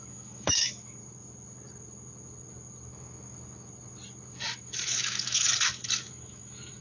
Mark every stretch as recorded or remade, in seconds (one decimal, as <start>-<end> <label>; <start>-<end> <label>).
0.0-1.0 remade; 1.0-4.4 recorded; 4.4-6.8 remade